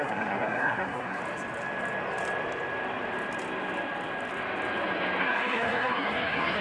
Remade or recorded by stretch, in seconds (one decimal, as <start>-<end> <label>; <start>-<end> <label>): 0.0-1.2 remade; 1.2-5.2 recorded; 5.2-6.6 remade